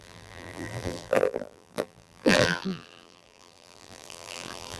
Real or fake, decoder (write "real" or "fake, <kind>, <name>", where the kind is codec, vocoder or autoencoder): fake, vocoder, BigVGAN v2